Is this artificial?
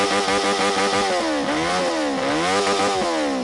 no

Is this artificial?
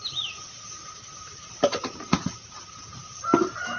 yes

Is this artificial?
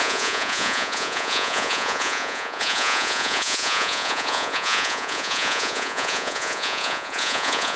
yes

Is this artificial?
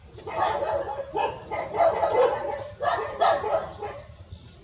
no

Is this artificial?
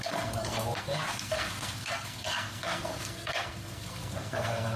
yes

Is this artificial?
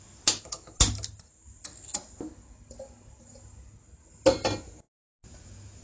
no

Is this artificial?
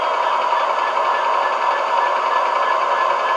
no